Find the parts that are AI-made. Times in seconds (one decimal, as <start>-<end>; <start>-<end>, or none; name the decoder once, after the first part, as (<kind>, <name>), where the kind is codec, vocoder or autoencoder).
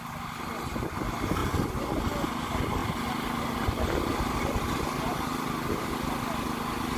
none